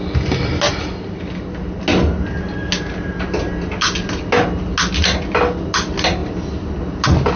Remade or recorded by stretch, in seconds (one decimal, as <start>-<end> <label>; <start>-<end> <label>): 0.0-7.4 recorded